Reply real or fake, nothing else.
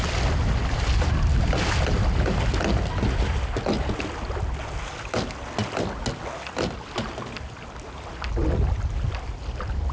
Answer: real